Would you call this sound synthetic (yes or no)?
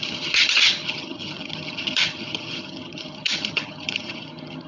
yes